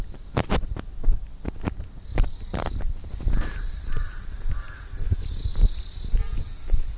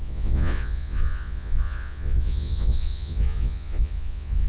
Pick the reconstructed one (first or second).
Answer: second